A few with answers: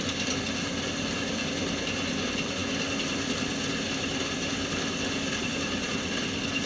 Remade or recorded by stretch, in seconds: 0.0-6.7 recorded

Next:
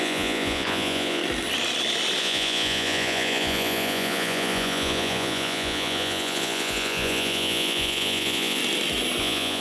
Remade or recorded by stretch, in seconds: 0.0-1.2 remade; 1.2-2.2 recorded; 2.2-8.6 remade; 8.6-9.2 recorded; 9.2-9.6 remade

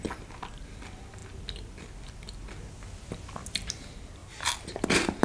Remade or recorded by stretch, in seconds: 0.0-5.2 recorded